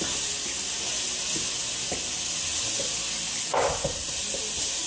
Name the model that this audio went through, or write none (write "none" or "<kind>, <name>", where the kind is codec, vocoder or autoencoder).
none